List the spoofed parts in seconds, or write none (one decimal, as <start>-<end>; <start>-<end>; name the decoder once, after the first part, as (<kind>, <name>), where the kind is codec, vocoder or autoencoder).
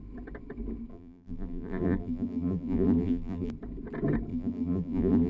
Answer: 0.9-3.5 (vocoder, BigVGAN v2); 4.3-5.3